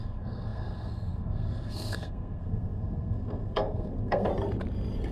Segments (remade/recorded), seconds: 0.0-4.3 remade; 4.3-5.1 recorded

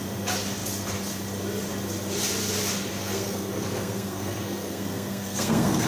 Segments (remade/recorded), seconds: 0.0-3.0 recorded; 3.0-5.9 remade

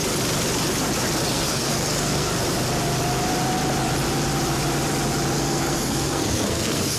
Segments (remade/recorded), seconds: 0.0-1.3 recorded; 1.3-2.3 remade; 2.3-5.4 recorded; 5.4-7.0 remade